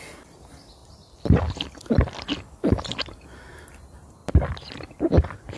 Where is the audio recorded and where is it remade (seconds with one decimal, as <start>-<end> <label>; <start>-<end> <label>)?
0.0-0.8 recorded; 0.8-1.6 remade; 1.6-4.2 recorded; 4.2-5.6 remade